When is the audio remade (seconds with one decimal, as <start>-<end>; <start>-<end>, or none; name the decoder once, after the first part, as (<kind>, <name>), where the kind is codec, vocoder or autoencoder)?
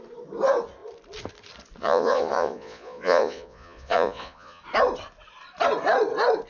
1.8-4.6 (vocoder, Vocos)